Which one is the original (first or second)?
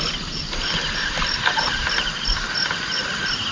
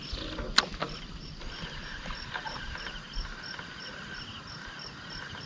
second